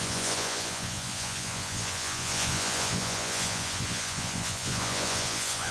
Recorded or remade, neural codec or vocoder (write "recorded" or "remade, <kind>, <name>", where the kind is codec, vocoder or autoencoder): remade, vocoder, Vocos